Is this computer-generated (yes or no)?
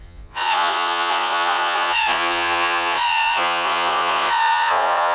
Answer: yes